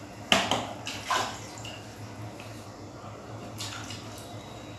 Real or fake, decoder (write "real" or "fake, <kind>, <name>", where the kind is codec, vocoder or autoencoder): real